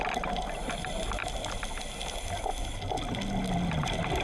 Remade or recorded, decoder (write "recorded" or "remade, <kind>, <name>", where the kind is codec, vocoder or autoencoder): recorded